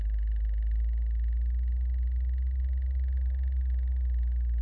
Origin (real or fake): real